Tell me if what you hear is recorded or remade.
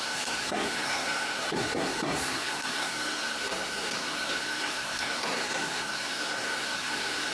remade